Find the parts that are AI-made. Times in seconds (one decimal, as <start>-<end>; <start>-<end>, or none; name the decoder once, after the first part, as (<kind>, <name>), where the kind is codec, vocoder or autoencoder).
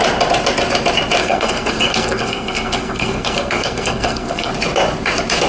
1.2-4.5 (codec, SNAC)